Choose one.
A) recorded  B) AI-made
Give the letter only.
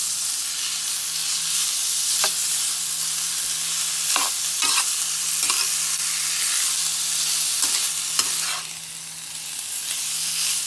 A